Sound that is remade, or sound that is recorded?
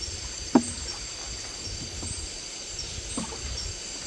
recorded